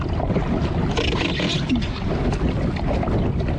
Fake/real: real